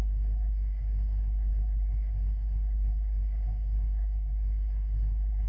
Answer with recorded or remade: remade